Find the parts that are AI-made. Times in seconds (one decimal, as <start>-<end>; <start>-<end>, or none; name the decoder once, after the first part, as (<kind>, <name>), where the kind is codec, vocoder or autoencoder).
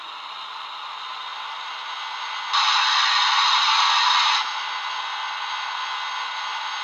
none